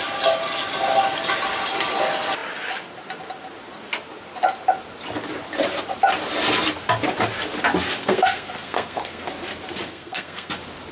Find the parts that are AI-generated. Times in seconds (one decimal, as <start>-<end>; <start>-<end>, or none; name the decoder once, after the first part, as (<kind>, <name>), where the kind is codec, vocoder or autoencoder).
8.0-9.3 (codec, SNAC); 9.9-10.5

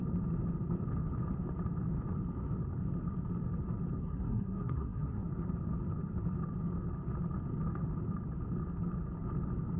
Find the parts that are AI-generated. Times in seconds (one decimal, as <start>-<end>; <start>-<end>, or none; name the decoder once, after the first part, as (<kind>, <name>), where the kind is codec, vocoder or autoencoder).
4.0-5.3 (codec, SNAC)

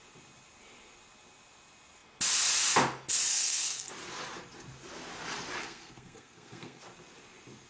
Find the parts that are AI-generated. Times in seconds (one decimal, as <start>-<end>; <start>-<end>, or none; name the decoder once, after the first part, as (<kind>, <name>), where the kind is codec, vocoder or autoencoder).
3.3-3.9 (codec, SNAC); 5.6-6.8

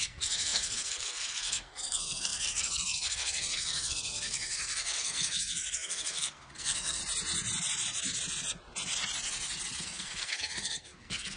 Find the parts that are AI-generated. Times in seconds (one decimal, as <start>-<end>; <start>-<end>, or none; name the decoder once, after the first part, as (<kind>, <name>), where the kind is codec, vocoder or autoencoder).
0.0-7.0 (codec, SNAC); 9.8-11.4

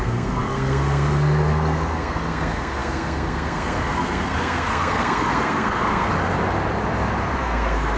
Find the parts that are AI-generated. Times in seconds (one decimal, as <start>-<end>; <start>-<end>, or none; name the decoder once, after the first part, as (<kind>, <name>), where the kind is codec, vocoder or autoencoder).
0.0-6.1 (codec, SNAC); 7.3-8.0

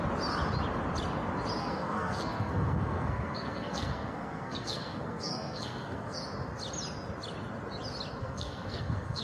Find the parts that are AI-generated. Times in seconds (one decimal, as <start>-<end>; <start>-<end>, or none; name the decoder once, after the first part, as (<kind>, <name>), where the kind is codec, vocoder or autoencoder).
1.6-6.2 (codec, SNAC); 8.2-9.2

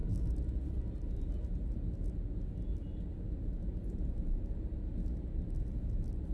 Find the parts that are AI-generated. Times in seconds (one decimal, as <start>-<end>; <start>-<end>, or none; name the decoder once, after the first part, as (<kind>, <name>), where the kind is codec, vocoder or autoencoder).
none

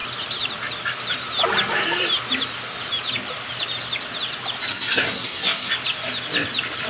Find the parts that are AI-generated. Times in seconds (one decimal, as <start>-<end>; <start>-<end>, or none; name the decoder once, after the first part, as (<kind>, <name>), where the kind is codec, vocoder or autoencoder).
4.7-5.7 (codec, SNAC)